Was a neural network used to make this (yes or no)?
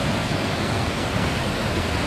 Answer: yes